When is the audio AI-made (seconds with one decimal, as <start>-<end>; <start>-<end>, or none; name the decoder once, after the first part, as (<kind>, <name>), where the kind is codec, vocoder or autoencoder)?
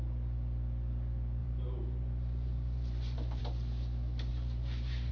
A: 1.4-3.4 (vocoder, BigVGAN v2); 4.3-5.1